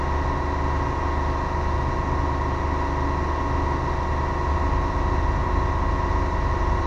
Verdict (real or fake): real